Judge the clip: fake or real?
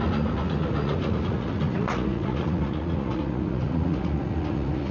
fake